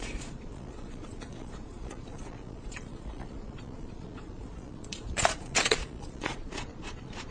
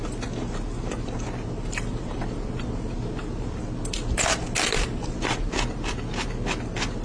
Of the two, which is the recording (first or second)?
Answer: second